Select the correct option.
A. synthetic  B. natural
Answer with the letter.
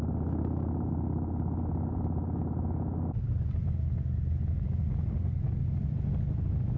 B